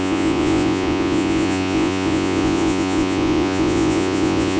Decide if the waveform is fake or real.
fake